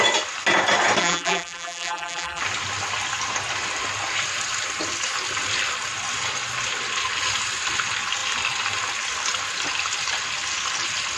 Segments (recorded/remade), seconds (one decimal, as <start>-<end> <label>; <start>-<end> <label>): 0.0-1.0 recorded; 1.0-2.4 remade; 2.4-11.2 recorded